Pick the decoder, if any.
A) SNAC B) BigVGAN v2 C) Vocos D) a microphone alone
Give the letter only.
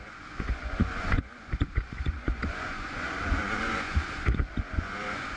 C